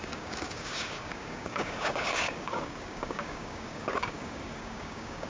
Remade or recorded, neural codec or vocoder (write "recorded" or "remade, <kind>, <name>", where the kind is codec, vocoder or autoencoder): remade, codec, DAC